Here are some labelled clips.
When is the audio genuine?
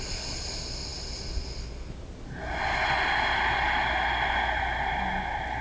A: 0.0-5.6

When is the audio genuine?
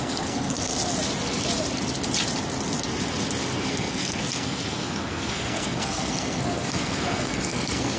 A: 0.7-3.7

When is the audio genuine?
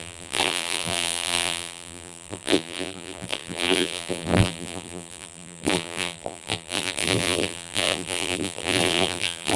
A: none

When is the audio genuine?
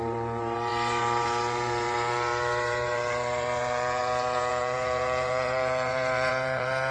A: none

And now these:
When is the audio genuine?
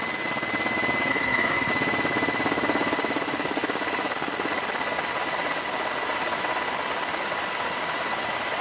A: 0.0-1.1; 1.7-8.6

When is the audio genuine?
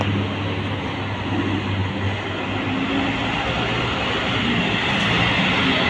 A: 0.0-5.9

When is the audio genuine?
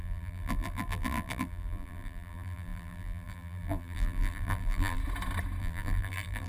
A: 5.0-5.6